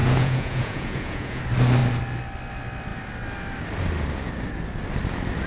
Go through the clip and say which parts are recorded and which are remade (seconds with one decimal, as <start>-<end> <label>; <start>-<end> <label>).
0.0-1.4 remade; 1.4-5.5 recorded